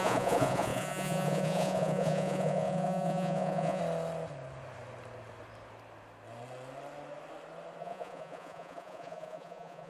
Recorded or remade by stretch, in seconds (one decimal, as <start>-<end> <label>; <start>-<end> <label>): 0.0-3.8 remade; 3.8-7.8 recorded; 7.8-9.9 remade